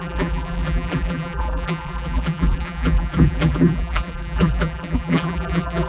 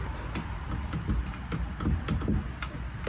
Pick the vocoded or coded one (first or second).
first